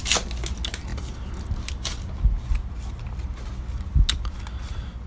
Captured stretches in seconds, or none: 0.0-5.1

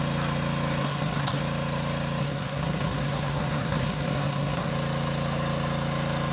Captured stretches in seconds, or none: 0.0-0.8; 1.4-2.2; 4.7-6.3

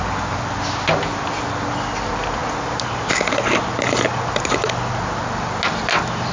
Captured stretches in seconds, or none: 0.0-6.3

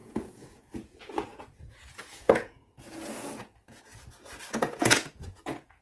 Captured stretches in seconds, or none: 3.9-4.5

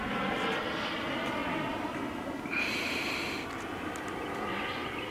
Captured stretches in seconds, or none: 0.0-5.1

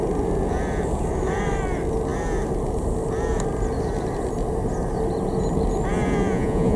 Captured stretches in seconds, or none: 0.0-5.9